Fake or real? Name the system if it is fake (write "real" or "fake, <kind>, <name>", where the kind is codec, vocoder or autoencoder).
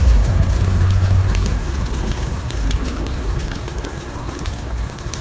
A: fake, codec, SNAC